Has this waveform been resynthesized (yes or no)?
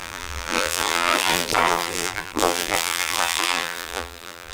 yes